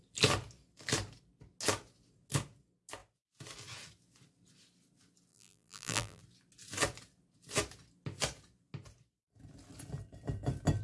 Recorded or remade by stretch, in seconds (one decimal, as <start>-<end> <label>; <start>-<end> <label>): 0.0-5.3 recorded; 5.3-6.2 remade; 6.2-10.8 recorded